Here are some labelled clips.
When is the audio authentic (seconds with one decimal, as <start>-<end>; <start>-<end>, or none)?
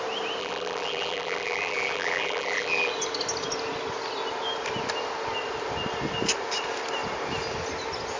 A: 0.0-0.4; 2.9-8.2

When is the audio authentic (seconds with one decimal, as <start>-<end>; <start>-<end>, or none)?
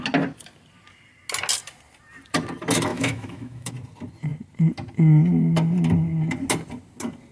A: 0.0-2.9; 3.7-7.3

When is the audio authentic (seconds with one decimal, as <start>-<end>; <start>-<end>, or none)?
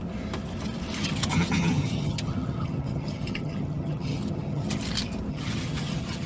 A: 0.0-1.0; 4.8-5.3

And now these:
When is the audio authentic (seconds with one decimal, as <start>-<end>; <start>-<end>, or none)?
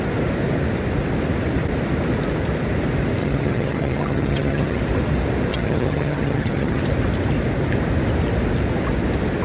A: 0.0-3.2; 4.8-5.5; 6.8-9.4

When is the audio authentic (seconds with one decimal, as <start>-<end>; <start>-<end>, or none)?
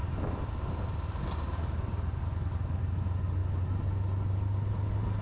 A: 0.0-5.2